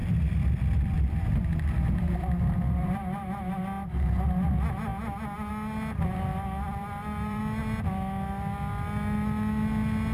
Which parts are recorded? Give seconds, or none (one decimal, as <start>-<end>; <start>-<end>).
3.9-6.3; 7.4-10.1